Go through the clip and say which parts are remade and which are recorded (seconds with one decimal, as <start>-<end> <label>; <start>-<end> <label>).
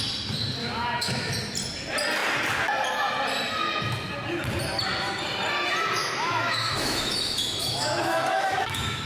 0.0-0.6 recorded; 0.6-1.3 remade; 1.3-6.0 recorded; 6.0-9.1 remade